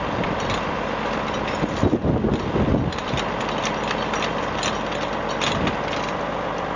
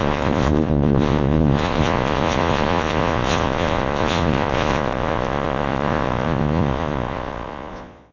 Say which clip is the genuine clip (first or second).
first